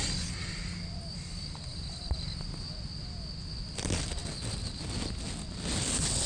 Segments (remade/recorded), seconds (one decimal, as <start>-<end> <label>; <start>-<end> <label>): 0.0-6.3 recorded

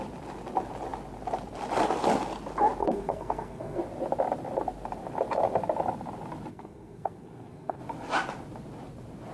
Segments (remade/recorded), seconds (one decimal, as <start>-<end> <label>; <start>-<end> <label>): 0.0-2.8 recorded; 2.8-3.8 remade; 3.8-6.5 recorded; 6.5-7.8 remade; 7.8-9.3 recorded

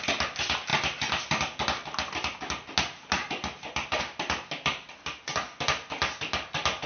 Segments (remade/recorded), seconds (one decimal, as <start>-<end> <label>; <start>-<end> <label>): 0.0-6.9 recorded